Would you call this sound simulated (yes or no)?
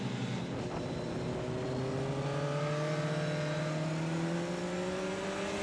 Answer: no